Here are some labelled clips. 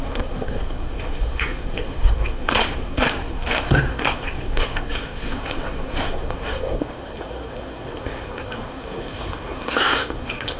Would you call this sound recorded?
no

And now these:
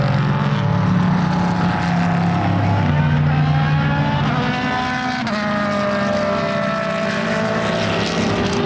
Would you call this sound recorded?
yes